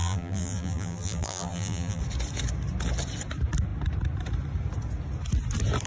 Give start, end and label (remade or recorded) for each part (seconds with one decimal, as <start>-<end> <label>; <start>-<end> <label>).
0.0-2.0 remade; 2.0-5.9 recorded